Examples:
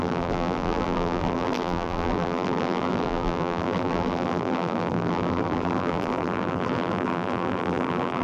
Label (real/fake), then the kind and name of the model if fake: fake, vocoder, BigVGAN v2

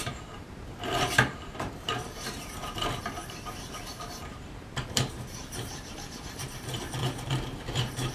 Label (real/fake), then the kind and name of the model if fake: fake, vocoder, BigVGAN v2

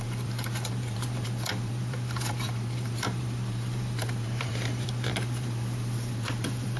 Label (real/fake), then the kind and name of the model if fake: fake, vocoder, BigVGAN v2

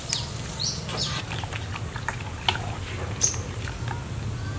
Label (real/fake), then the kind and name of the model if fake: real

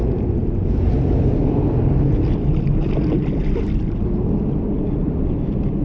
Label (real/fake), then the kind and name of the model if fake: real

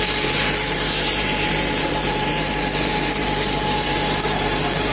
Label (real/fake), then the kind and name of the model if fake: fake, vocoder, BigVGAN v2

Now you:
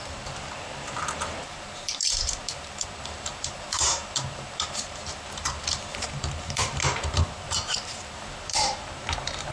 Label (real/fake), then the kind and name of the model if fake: fake, vocoder, BigVGAN v2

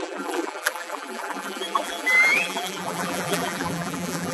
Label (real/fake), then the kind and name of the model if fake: fake, vocoder, BigVGAN v2